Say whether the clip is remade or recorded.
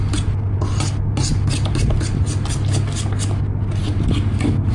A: recorded